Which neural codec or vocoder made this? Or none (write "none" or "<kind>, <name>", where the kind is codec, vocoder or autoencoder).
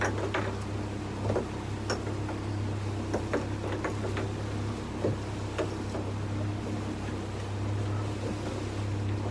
none